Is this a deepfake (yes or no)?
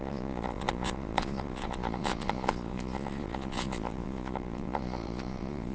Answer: yes